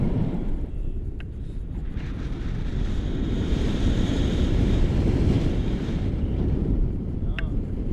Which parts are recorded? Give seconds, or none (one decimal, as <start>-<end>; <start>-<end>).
1.8-3.0